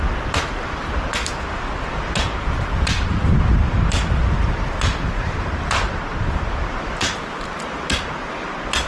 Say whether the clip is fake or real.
real